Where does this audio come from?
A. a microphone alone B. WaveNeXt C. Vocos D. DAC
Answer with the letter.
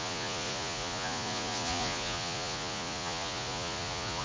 C